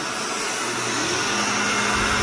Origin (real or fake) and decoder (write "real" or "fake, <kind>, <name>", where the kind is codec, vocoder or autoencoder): real